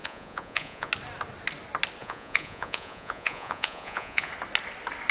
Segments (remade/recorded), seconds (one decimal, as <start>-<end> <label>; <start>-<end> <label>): 0.0-0.9 remade; 0.9-2.0 recorded; 2.0-4.3 remade; 4.3-5.1 recorded